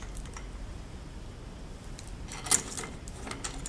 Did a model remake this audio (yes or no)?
no